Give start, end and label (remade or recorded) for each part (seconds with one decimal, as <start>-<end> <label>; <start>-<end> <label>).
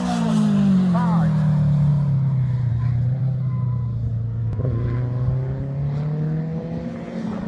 0.0-7.5 recorded